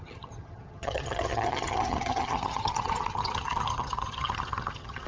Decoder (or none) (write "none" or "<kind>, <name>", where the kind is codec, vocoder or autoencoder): vocoder, HiFi-GAN